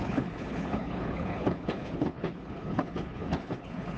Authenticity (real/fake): fake